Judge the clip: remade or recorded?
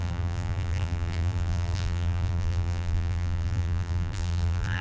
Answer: remade